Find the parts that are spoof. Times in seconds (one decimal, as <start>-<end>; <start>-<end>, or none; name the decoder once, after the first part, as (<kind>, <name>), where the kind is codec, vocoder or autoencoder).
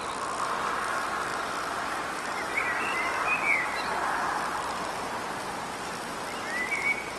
1.3-5.0 (vocoder, BigVGAN v2)